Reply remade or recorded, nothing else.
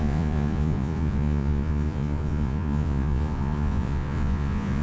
remade